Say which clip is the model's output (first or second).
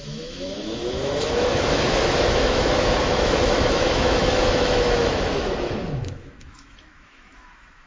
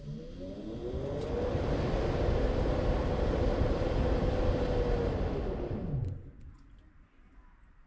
first